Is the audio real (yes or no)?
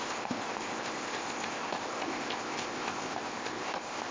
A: no